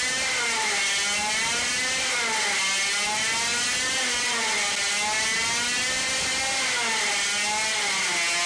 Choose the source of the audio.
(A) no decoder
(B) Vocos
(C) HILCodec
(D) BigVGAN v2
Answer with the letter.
A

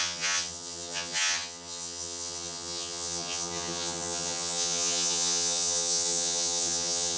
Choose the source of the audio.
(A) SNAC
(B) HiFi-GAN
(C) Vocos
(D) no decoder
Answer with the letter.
B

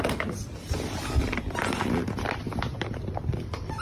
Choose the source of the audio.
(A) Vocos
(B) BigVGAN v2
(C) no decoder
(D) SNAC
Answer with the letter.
B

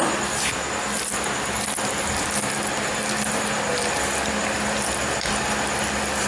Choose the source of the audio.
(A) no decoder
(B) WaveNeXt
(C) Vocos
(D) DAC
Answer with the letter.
A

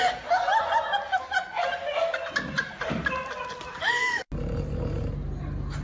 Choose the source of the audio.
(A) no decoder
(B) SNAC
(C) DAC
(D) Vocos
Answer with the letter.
A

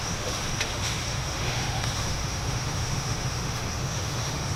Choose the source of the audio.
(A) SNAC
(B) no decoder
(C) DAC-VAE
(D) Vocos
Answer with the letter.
C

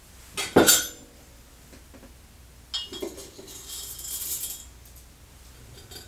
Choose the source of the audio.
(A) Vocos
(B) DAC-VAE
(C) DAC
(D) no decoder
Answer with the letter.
D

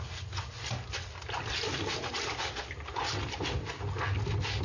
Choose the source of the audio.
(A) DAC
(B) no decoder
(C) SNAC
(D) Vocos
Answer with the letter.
B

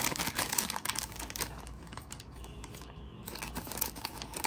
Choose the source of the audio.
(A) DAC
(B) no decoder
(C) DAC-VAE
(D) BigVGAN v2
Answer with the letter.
A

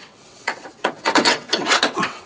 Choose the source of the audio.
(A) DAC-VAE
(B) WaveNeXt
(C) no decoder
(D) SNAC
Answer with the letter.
B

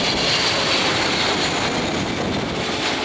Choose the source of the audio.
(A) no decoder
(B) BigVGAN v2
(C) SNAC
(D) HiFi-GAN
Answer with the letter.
A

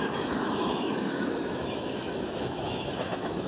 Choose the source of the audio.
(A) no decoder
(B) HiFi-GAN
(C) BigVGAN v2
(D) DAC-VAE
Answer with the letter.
D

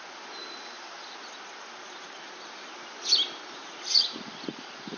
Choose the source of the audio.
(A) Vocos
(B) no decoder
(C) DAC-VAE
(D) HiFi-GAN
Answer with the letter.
B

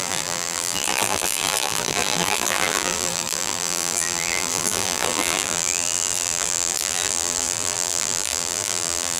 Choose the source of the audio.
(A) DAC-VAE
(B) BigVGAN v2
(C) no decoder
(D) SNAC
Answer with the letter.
B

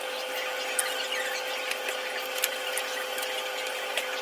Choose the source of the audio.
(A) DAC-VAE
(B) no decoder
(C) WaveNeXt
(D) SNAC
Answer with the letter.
B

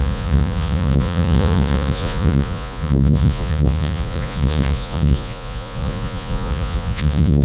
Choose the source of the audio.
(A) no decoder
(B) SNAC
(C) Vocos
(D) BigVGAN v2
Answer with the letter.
C